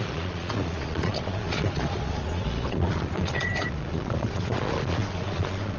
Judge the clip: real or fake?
fake